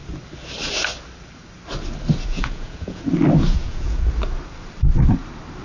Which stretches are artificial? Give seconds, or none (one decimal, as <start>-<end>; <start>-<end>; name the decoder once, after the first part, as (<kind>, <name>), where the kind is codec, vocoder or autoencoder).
2.3-3.1 (vocoder, Vocos); 3.5-4.1